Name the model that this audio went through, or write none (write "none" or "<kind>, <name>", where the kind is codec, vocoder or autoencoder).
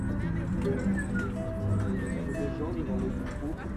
none